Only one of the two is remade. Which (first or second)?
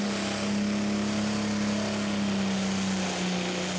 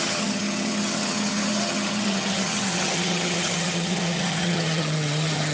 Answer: second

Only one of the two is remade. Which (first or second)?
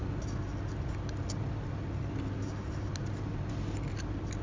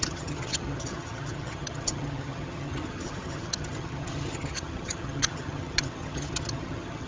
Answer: second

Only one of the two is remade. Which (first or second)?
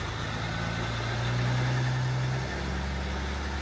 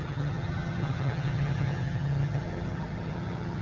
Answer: second